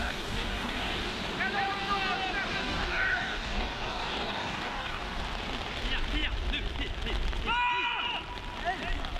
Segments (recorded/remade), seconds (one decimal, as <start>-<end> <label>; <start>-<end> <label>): 0.0-1.2 remade; 1.2-2.6 recorded; 2.6-5.2 remade; 5.2-9.2 recorded